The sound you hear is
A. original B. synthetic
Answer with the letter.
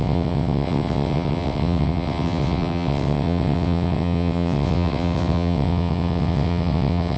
B